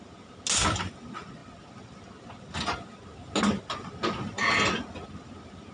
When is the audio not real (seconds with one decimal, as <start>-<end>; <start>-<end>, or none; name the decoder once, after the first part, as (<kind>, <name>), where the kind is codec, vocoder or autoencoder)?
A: none